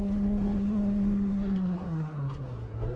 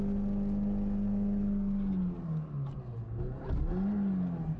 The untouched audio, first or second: second